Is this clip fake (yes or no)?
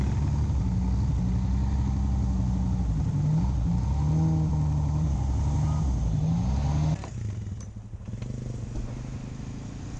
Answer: no